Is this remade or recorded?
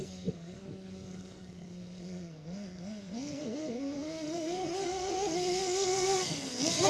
remade